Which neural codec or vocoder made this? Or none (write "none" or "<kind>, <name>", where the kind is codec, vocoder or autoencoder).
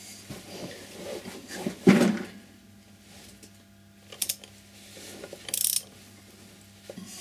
none